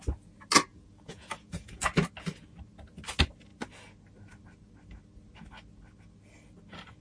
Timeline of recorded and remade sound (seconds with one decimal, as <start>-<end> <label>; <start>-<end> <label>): 0.0-0.7 recorded; 0.7-1.9 remade; 1.9-7.0 recorded